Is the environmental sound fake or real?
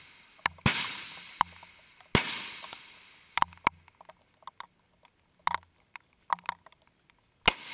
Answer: real